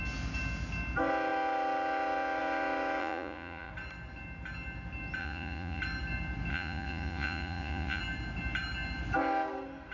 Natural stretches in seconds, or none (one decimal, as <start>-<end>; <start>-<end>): 0.0-3.0; 3.7-5.2; 5.8-6.5; 8.0-9.9

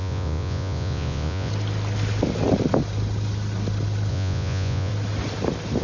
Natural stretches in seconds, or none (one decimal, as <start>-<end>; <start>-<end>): 1.5-4.1; 4.9-5.8

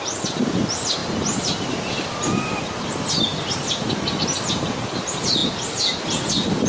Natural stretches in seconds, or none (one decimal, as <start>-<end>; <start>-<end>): 0.0-6.7